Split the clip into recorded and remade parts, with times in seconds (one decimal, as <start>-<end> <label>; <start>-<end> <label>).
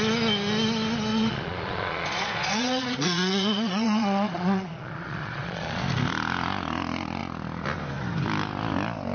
0.0-1.1 recorded; 1.1-5.8 remade; 5.8-9.1 recorded